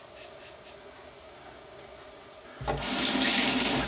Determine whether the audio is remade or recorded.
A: recorded